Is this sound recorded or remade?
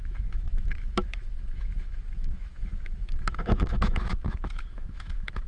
remade